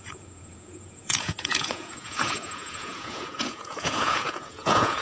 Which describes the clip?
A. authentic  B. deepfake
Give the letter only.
B